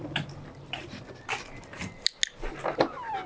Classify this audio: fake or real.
real